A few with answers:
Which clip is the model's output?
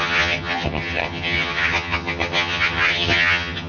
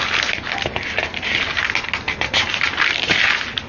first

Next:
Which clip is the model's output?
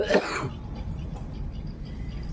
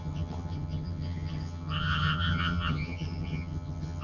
second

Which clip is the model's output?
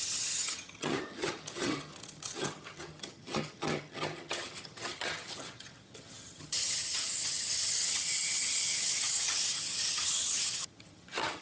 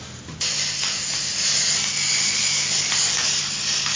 first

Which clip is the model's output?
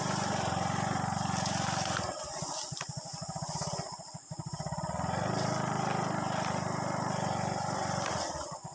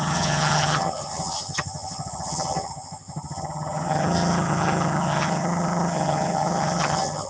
second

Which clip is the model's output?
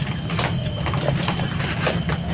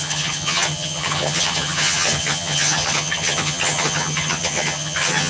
second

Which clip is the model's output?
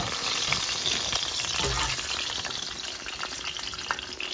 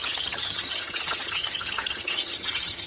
second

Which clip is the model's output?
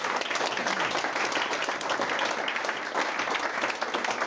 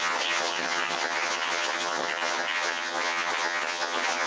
second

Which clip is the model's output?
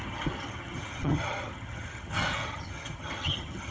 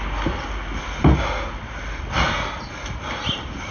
first